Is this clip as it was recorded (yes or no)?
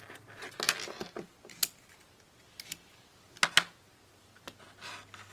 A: yes